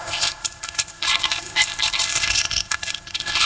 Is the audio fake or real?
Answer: fake